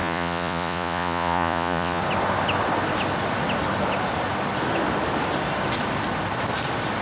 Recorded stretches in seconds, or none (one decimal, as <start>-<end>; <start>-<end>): 2.0-7.0